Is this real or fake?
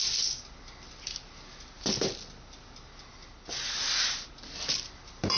real